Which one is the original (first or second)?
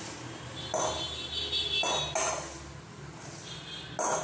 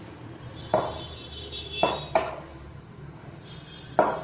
first